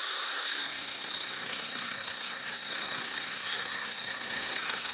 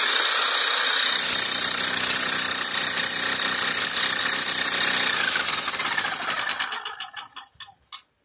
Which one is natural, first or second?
second